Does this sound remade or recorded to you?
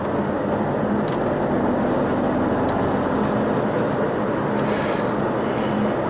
recorded